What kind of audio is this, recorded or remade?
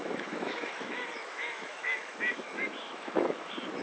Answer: remade